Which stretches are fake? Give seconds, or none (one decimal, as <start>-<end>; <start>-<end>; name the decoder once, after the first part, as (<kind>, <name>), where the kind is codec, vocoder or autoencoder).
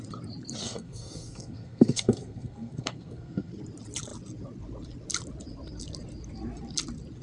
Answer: 0.6-3.5 (codec, SNAC)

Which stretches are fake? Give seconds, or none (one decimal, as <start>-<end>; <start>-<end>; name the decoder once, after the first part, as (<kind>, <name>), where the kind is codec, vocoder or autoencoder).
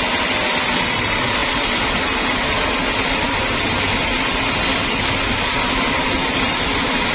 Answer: none